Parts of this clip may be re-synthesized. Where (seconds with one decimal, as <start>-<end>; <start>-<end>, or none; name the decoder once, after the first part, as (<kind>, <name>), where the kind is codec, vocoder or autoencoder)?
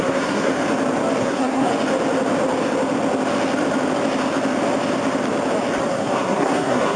0.0-0.5 (codec, SNAC); 1.2-1.7; 5.9-7.0